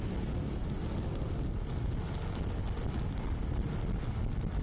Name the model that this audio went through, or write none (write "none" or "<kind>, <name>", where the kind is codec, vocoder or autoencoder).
none